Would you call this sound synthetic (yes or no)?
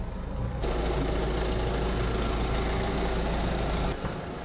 no